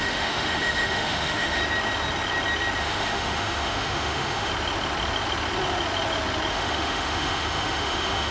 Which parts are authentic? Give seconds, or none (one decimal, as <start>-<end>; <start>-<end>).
1.6-2.8; 4.5-6.5